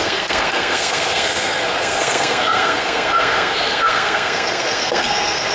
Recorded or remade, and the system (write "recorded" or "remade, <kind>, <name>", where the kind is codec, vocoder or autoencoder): remade, codec, SNAC